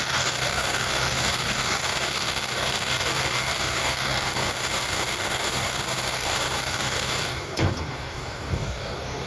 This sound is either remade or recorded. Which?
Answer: remade